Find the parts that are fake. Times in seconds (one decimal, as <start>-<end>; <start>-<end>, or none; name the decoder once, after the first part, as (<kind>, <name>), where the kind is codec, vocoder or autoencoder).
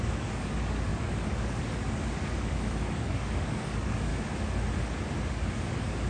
0.0-4.1 (codec, DAC); 5.3-6.1